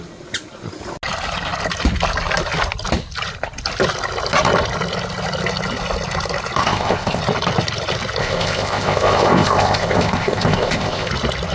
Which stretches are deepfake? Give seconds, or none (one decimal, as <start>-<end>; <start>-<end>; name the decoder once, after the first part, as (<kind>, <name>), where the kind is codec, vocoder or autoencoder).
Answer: 6.6-7.2 (codec, ZipCodec); 8.2-11.1